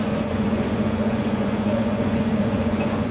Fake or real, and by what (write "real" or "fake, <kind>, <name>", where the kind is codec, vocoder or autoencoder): fake, vocoder, Vocos